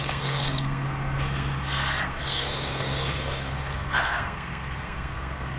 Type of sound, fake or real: fake